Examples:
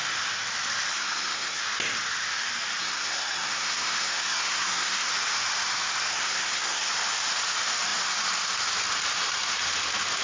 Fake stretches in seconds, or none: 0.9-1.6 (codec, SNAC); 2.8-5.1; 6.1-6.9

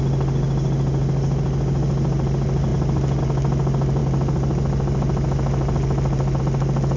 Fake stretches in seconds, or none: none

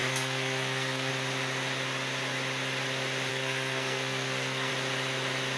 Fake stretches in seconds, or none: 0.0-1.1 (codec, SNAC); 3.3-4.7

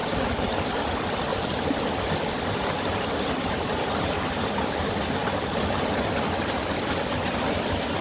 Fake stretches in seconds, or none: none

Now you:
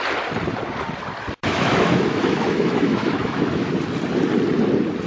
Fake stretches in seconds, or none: 1.4-3.7 (autoencoder, DAC-VAE)

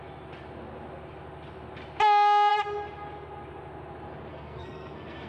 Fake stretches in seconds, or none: 4.3-5.3 (codec, SNAC)

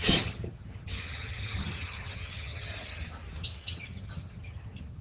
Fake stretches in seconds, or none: 0.0-2.7 (vocoder, HiFi-GAN); 3.4-5.0